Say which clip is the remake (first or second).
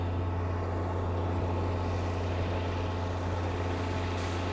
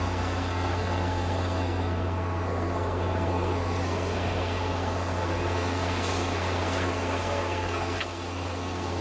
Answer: second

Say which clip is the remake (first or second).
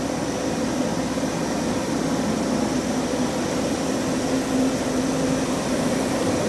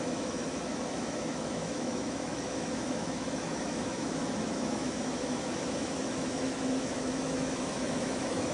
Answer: second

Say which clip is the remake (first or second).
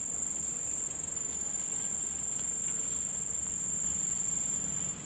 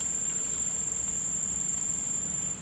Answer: second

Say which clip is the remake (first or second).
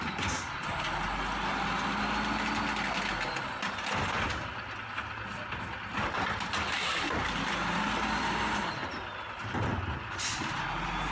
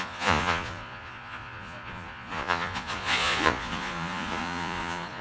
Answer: second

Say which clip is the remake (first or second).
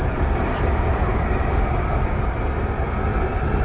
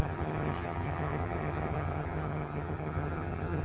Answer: second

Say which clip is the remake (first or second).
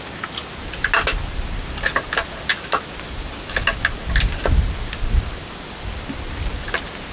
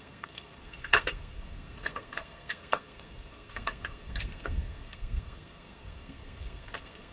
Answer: second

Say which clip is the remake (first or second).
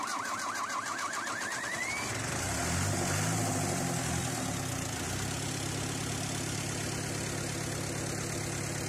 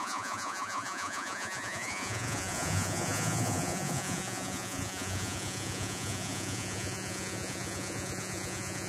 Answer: second